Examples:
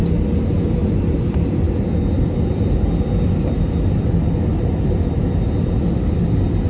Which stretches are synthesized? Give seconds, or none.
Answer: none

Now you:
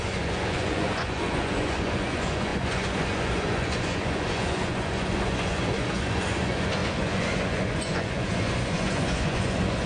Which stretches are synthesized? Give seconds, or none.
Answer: 0.0-9.9 (vocoder, Vocos)

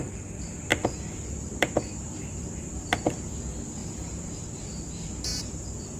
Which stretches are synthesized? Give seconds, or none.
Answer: 0.7-3.4 (vocoder, BigVGAN v2); 3.8-4.6; 5.3-6.0

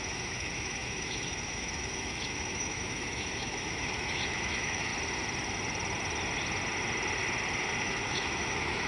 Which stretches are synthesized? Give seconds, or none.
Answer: 0.0-4.9 (autoencoder, DAC-VAE); 7.8-8.9

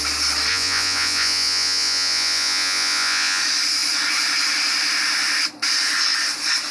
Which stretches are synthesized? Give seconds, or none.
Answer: 0.5-3.4 (vocoder, Vocos)

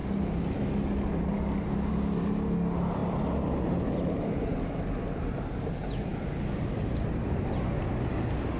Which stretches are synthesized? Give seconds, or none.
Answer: none

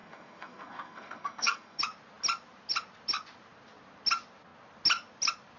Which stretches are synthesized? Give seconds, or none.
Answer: 0.0-1.8 (codec, SNAC)

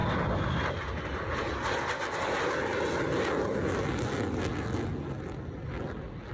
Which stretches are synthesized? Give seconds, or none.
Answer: none